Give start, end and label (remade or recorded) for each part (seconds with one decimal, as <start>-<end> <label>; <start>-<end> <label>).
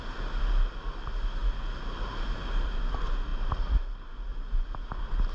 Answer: 0.0-5.3 recorded